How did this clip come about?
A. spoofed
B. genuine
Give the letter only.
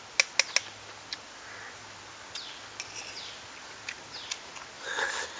B